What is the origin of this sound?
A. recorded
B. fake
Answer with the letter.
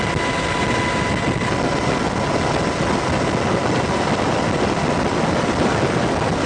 A